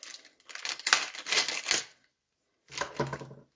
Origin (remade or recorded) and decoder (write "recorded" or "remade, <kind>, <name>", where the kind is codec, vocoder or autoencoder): recorded